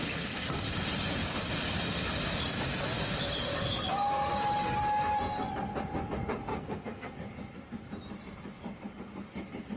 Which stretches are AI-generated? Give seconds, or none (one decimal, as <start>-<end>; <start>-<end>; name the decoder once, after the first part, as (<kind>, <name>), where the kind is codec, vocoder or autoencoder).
6.5-7.1 (codec, SNAC)